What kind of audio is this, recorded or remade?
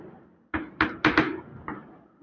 recorded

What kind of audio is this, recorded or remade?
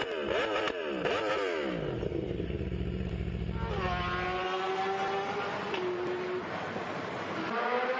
recorded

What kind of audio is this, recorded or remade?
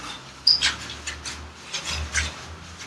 recorded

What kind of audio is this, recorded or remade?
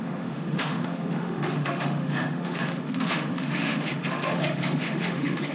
remade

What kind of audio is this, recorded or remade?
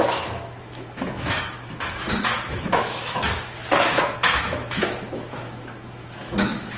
remade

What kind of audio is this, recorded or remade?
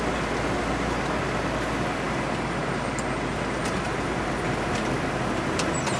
recorded